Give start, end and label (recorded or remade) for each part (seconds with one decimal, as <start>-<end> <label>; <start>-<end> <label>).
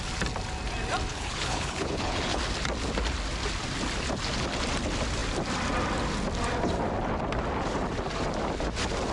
0.0-1.1 recorded; 1.1-2.4 remade; 2.4-9.1 recorded